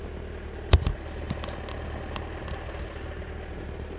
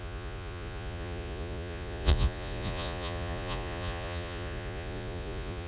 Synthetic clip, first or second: second